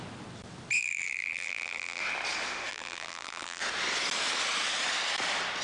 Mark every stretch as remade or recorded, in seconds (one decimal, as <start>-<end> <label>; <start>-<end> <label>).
0.0-0.8 recorded; 0.8-2.0 remade; 2.0-2.7 recorded; 2.7-3.6 remade; 3.6-5.6 recorded